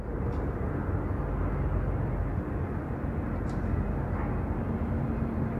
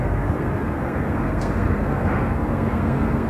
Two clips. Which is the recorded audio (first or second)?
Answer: first